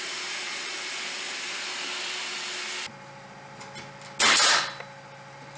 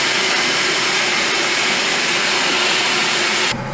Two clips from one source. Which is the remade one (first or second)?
second